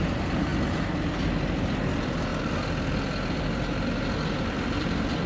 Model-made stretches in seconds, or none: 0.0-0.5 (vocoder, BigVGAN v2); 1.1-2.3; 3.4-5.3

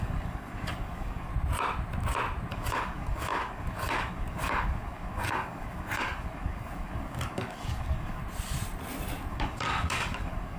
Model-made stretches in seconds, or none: 0.0-1.3 (codec, DAC); 2.5-8.2; 9.3-10.6

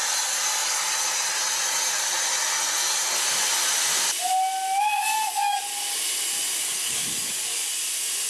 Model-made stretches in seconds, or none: 4.9-5.6 (codec, DAC); 6.6-7.7

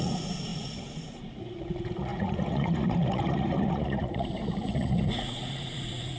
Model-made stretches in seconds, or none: 0.0-6.2 (vocoder, Vocos)

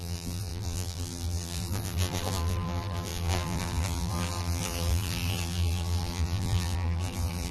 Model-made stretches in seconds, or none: 0.0-7.5 (vocoder, BigVGAN v2)

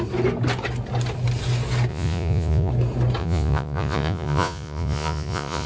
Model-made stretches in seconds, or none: 1.9-2.7 (vocoder, Vocos); 3.2-5.7